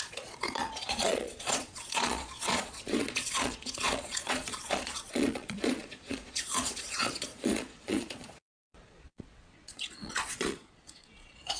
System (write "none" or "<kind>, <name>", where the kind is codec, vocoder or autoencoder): vocoder, Vocos